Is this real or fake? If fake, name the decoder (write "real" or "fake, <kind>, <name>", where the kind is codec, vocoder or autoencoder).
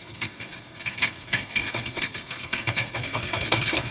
fake, codec, SNAC